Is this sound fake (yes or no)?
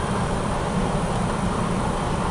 no